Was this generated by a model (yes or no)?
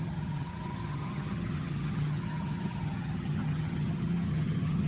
yes